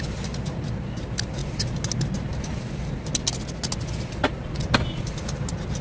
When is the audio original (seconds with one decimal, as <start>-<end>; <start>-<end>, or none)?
0.0-5.8